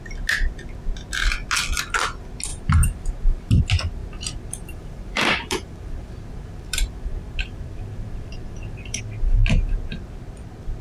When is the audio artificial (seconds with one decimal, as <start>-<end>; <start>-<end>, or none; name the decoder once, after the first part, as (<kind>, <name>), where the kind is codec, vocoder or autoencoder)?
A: 2.5-3.6 (vocoder, BigVGAN v2); 4.0-9.0